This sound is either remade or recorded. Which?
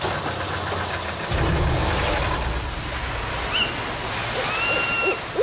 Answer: recorded